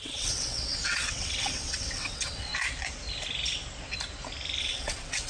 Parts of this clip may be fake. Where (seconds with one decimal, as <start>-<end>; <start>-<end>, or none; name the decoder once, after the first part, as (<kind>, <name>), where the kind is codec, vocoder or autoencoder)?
0.0-2.5 (vocoder, WaveNeXt); 4.6-5.3